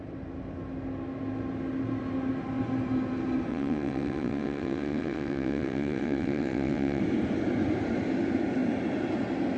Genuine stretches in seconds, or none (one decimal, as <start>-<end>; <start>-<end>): 0.0-3.5; 7.0-9.6